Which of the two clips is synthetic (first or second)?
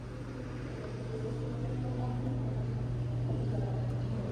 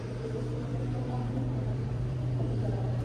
second